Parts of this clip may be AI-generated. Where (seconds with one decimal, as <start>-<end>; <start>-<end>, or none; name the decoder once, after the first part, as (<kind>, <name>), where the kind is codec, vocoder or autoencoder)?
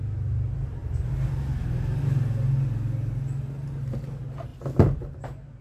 none